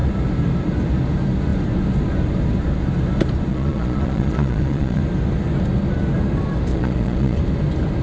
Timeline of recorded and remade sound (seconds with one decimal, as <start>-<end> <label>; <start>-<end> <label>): 0.0-3.5 recorded; 3.5-5.0 remade; 5.0-6.7 recorded; 6.7-7.4 remade; 7.4-8.0 recorded